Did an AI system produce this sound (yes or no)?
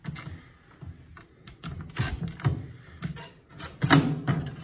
no